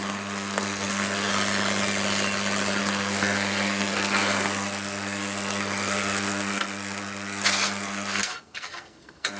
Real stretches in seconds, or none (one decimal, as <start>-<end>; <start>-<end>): 1.3-2.8